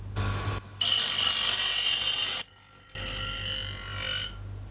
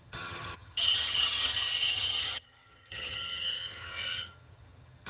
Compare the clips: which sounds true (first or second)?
first